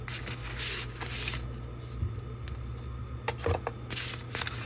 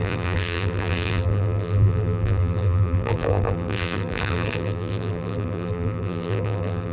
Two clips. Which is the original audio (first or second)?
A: first